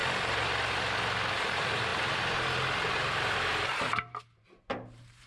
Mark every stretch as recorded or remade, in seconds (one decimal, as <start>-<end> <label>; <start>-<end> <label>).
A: 0.0-1.3 recorded; 1.3-5.3 remade